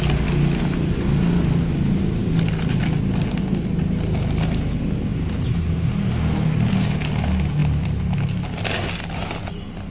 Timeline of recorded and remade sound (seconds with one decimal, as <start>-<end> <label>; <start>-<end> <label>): 0.0-5.1 recorded; 5.1-6.1 remade; 6.1-9.9 recorded